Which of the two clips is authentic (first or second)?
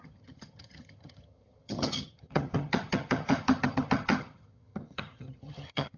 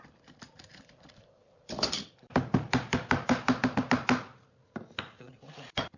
second